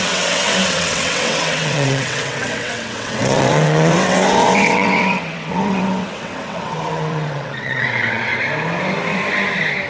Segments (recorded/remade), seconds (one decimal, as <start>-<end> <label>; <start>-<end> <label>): 0.0-8.3 remade; 8.3-9.9 recorded